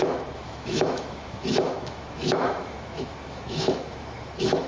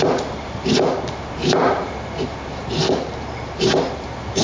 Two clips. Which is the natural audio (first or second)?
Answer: second